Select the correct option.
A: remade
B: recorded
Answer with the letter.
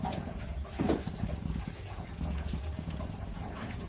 A